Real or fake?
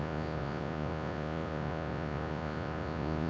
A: fake